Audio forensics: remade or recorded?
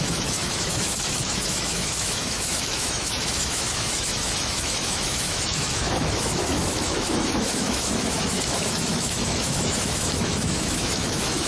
remade